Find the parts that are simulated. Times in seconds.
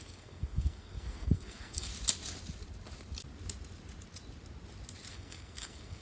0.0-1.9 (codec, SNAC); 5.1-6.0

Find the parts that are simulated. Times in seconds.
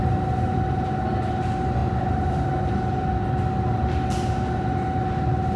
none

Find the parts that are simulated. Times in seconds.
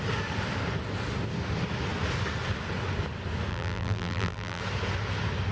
3.5-4.6 (vocoder, BigVGAN v2)